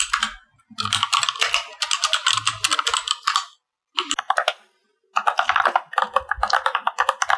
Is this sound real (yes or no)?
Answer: yes